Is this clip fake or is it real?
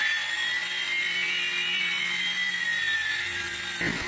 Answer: real